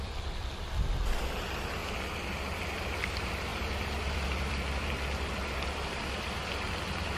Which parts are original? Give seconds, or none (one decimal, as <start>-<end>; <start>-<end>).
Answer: 0.0-3.5; 6.7-7.2

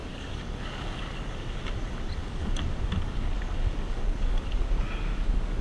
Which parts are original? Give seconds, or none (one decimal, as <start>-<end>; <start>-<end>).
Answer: 1.6-2.2

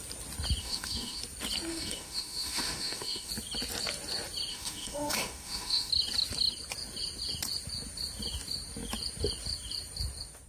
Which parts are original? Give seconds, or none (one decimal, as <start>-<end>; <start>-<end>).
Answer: 0.0-0.6; 1.2-1.7; 3.3-4.5; 5.9-10.5

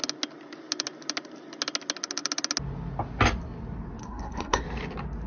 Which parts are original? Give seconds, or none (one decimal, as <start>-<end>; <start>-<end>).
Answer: 0.0-4.0; 4.6-5.3

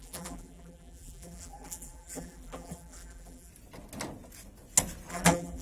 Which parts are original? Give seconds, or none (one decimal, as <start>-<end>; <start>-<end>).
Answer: 3.5-5.1

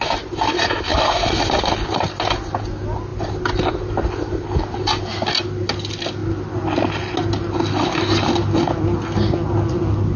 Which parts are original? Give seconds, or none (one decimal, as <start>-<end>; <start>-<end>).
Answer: 0.0-10.2

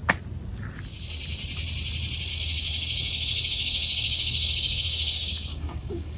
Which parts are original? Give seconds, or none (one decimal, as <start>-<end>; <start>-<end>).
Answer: 0.0-2.3

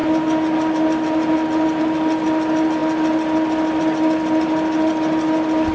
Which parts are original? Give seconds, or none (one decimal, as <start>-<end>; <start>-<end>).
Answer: 0.0-5.7